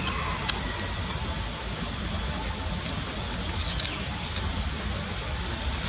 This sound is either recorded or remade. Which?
recorded